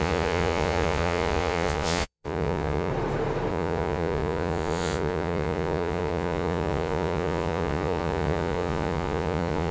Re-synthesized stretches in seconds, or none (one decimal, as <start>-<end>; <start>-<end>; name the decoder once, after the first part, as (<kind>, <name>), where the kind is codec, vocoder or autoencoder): 0.0-2.9 (vocoder, Vocos); 3.5-9.7